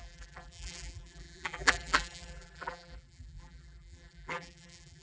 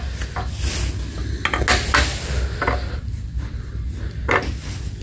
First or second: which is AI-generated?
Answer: first